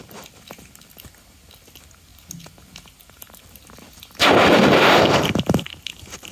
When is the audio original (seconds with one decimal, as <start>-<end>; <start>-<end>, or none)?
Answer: 0.0-6.3